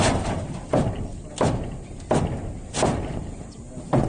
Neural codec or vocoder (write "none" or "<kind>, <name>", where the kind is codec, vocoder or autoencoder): none